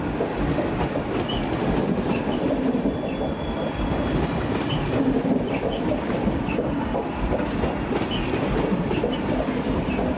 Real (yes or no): yes